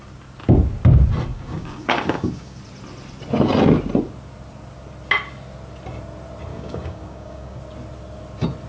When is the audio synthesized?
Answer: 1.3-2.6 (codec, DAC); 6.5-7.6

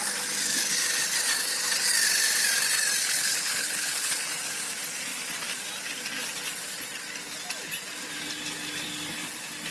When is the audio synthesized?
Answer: 3.0-4.2 (codec, HILCodec)